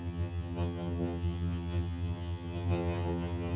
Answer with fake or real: fake